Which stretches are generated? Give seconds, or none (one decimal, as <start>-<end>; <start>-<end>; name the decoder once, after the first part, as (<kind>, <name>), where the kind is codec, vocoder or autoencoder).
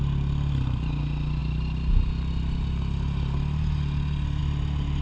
none